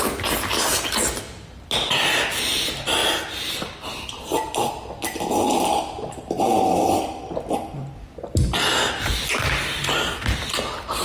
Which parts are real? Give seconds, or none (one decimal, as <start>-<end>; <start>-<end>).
0.0-3.0; 4.7-11.0